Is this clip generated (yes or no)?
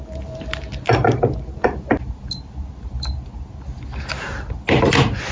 no